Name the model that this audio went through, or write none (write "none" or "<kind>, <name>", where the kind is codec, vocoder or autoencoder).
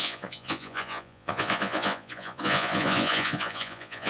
vocoder, Vocos